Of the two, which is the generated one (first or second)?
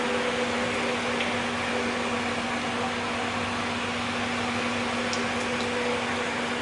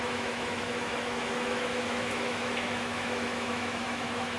second